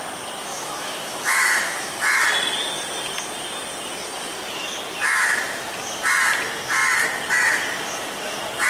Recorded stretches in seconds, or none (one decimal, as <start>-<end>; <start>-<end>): 0.0-0.5; 2.3-8.7

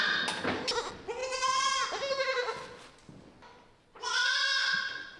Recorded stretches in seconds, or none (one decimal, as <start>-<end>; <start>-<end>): 0.0-5.2

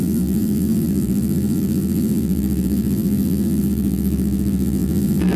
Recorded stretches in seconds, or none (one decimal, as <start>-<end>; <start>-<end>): none

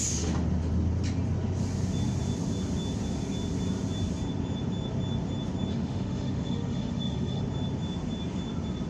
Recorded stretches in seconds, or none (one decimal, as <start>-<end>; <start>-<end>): 0.0-5.7; 7.4-8.9

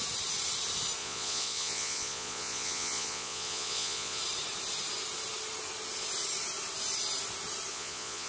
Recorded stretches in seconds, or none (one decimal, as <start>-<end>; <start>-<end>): 0.0-1.0; 4.2-7.7